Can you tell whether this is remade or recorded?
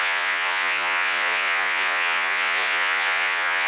remade